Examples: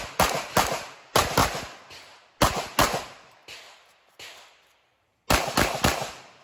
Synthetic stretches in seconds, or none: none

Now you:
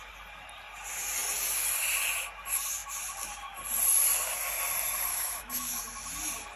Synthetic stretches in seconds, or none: 5.1-5.8

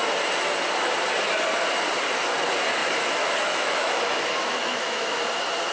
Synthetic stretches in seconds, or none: 2.8-5.1

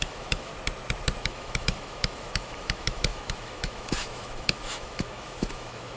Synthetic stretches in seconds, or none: 0.0-0.5; 1.2-6.0

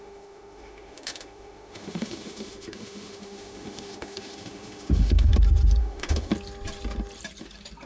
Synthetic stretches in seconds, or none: 0.0-5.3; 5.8-6.3

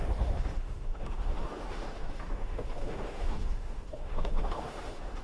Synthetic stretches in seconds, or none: 0.0-5.2